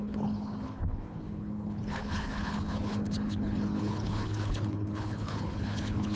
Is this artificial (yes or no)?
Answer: yes